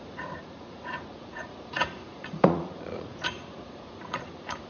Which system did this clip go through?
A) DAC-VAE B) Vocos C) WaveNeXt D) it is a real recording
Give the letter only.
B